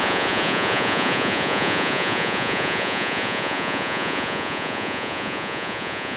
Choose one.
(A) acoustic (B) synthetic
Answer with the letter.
B